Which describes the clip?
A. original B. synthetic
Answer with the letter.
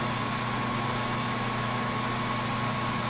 A